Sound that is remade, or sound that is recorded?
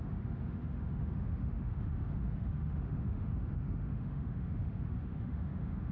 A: remade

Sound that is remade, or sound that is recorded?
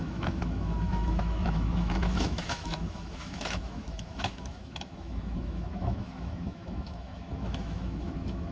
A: remade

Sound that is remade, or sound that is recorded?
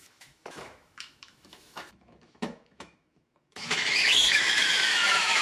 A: remade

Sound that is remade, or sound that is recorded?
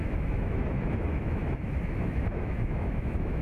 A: remade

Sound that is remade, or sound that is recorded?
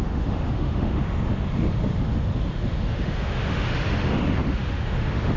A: remade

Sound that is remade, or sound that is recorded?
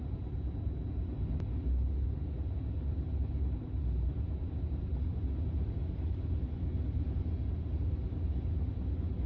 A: recorded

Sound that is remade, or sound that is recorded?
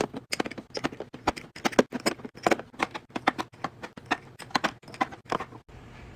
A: recorded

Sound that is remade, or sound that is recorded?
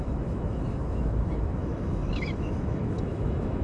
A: remade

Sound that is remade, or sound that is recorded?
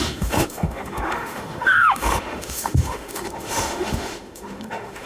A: remade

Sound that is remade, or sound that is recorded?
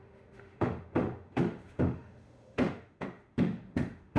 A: remade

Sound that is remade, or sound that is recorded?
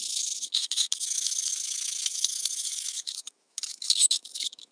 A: remade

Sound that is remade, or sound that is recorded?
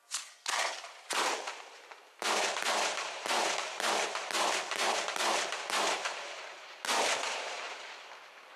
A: recorded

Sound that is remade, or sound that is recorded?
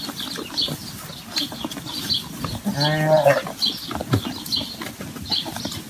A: recorded